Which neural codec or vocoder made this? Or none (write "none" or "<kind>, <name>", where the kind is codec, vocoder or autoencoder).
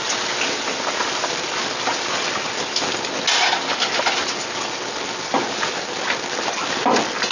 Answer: none